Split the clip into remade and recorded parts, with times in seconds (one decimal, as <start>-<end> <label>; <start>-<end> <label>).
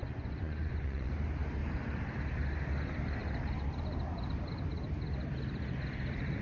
0.0-1.1 remade; 1.1-6.4 recorded